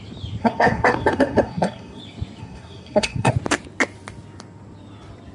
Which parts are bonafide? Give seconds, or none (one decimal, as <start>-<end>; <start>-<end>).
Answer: 0.0-0.4; 2.0-2.4; 3.3-5.3